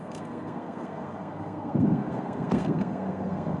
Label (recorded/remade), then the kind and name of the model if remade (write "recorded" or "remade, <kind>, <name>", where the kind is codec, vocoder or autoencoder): remade, codec, SNAC